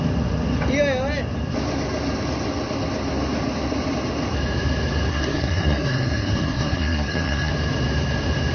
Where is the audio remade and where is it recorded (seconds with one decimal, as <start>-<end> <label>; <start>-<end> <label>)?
0.0-5.1 recorded; 5.1-7.5 remade; 7.5-8.5 recorded